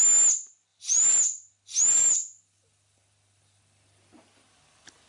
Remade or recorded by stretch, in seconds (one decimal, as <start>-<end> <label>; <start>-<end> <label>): 0.0-0.7 recorded; 0.7-3.6 remade; 3.6-5.1 recorded